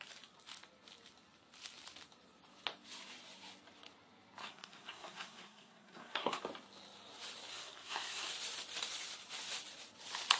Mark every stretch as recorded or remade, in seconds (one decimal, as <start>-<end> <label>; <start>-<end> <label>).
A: 0.0-4.4 recorded; 4.4-6.4 remade; 6.4-7.5 recorded; 7.5-8.3 remade; 8.3-10.4 recorded